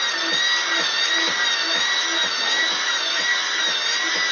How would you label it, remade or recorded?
recorded